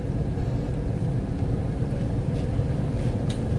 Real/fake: real